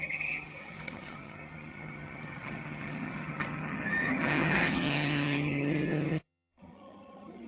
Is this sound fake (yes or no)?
yes